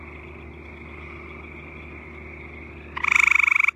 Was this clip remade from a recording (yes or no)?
no